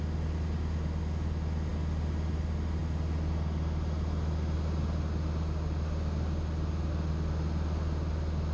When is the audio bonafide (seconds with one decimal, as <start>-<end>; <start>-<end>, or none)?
0.0-8.5